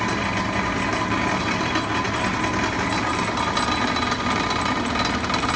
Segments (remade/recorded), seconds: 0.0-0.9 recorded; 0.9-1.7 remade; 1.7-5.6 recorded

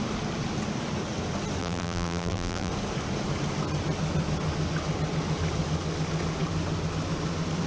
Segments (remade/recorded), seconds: 0.0-1.6 recorded; 1.6-2.7 remade; 2.7-7.7 recorded